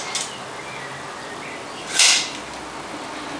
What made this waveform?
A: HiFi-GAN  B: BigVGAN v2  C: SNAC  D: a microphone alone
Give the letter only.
D